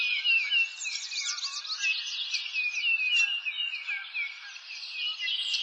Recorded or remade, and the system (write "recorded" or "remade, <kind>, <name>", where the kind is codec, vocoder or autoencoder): recorded